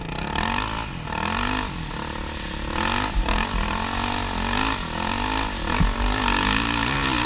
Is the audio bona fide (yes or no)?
yes